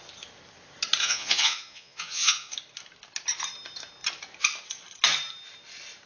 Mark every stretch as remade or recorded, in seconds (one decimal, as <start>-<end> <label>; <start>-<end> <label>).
0.0-1.0 recorded; 1.0-2.5 remade; 2.5-6.1 recorded